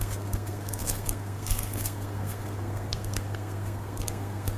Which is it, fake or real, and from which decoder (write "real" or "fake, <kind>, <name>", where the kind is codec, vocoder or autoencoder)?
fake, codec, SNAC